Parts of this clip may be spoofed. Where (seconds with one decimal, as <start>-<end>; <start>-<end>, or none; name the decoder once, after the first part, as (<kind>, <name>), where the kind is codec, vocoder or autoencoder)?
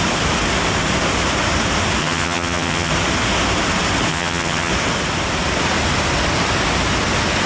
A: 2.0-2.9 (vocoder, HiFi-GAN); 4.1-4.7